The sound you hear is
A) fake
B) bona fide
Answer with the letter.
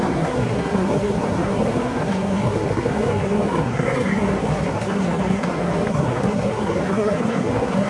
A